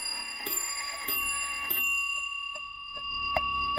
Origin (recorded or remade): remade